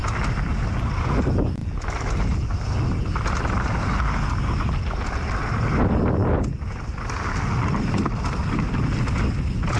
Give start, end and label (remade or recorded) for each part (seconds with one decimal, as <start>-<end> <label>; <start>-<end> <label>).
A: 0.0-9.8 recorded